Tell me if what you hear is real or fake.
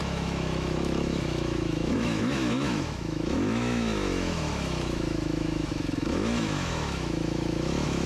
fake